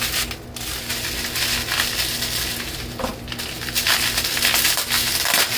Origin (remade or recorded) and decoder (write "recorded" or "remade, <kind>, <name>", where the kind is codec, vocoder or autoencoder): recorded